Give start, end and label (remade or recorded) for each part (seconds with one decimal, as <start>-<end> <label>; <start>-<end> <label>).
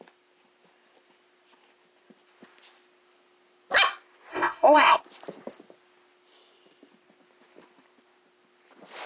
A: 0.0-4.3 recorded; 4.3-5.0 remade; 5.0-9.1 recorded